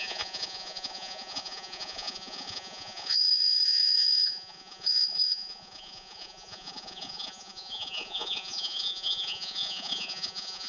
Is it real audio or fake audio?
fake